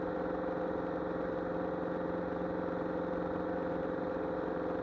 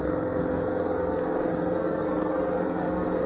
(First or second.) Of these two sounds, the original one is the first